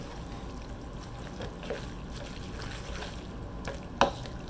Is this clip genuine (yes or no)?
yes